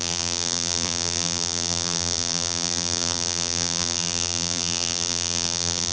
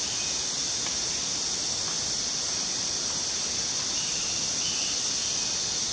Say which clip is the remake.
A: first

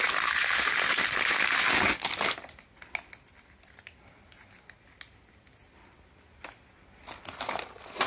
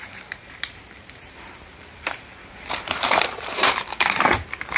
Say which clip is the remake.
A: second